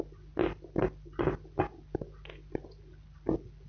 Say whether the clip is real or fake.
real